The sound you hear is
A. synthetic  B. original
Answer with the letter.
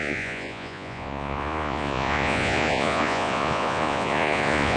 A